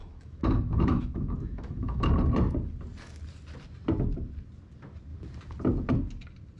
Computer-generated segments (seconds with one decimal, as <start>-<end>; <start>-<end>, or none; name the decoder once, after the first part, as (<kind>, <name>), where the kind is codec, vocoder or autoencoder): 0.0-2.1 (autoencoder, DAC-VAE)